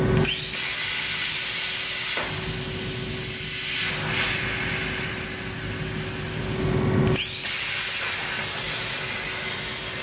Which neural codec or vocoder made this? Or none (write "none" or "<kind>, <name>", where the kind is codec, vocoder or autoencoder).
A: none